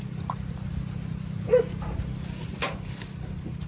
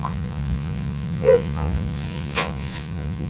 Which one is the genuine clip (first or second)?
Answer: first